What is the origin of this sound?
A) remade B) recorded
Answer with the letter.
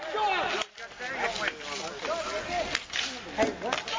B